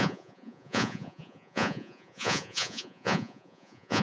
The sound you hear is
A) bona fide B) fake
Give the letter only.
B